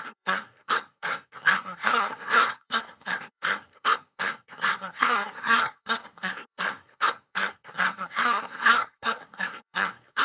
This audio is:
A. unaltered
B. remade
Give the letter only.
B